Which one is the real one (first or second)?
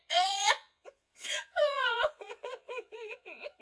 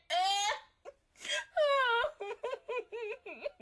second